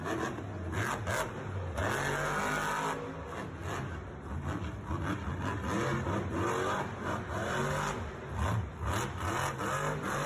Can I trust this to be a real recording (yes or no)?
yes